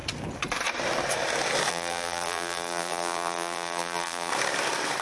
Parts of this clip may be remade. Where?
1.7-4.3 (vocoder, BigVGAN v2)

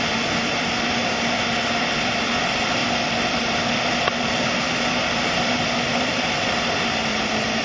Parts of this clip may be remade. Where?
0.0-7.6 (vocoder, BigVGAN v2)

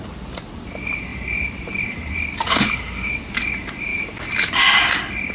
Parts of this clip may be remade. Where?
1.1-3.2 (vocoder, BigVGAN v2); 3.9-4.5